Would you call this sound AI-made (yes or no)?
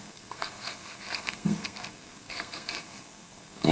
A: yes